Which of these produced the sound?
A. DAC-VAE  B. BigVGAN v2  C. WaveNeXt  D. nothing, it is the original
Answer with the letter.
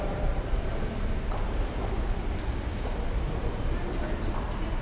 B